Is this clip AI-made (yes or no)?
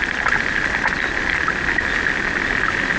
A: no